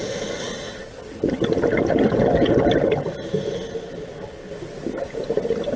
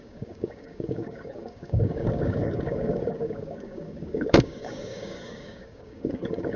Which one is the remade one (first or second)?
second